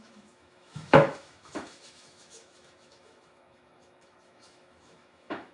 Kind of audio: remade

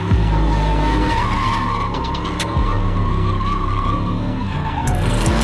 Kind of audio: remade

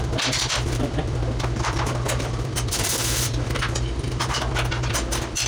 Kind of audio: remade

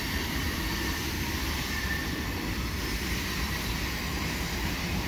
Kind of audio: recorded